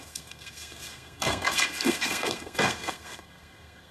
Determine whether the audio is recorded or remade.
remade